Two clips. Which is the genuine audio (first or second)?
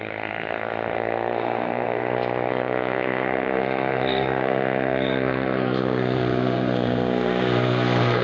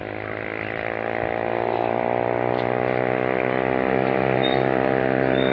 second